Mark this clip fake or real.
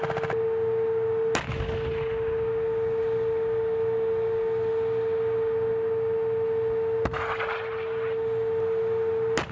real